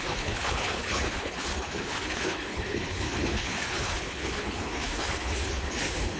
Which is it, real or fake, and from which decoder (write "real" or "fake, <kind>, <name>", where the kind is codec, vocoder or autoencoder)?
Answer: fake, codec, HILCodec